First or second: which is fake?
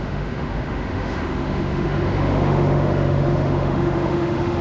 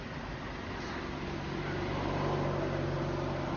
first